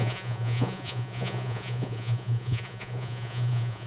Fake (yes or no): yes